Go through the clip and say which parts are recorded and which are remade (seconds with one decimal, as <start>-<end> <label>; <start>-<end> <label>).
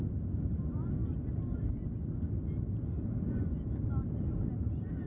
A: 0.0-5.1 recorded